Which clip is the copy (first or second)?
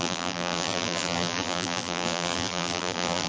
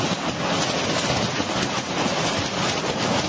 first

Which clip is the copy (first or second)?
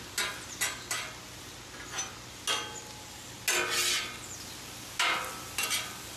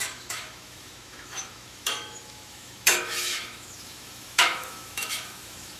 second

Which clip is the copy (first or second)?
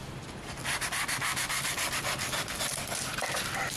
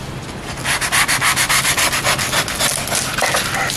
first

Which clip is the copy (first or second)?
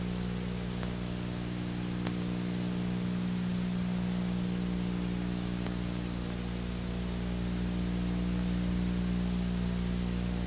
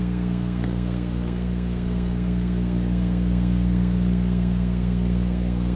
second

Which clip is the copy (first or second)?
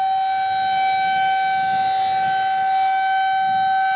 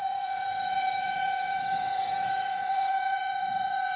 second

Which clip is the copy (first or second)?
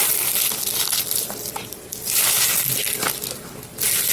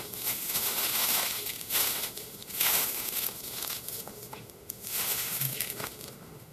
second